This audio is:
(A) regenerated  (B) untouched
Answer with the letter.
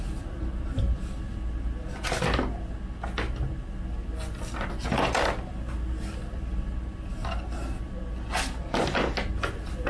B